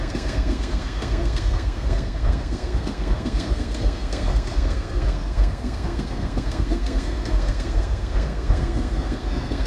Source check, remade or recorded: remade